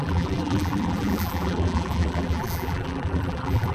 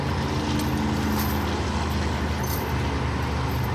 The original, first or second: second